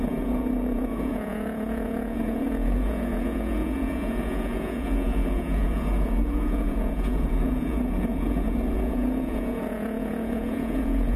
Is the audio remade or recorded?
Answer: remade